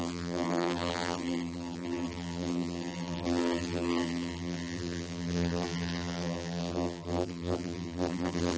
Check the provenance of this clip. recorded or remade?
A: remade